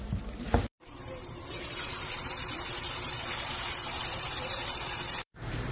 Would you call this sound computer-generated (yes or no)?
yes